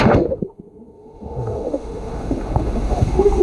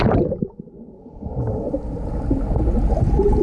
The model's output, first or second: first